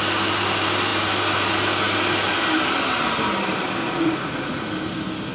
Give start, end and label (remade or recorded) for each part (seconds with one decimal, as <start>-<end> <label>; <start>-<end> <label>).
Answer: 0.0-3.8 recorded; 3.8-4.7 remade; 4.7-5.3 recorded